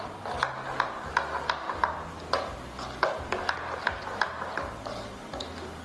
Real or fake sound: real